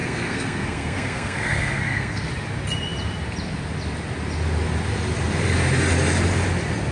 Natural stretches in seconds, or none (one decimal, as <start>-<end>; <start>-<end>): 2.3-6.9